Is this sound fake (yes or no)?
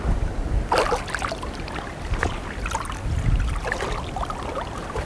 no